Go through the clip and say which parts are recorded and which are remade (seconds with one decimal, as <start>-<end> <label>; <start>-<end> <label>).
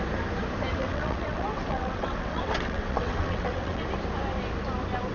0.0-0.7 recorded; 0.7-3.8 remade; 3.8-5.1 recorded